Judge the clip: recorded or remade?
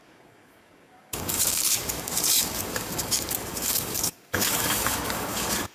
remade